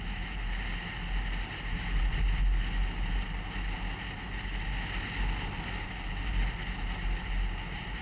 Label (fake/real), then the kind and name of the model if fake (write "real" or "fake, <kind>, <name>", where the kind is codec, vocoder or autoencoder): real